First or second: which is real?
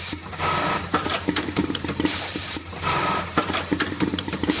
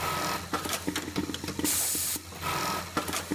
second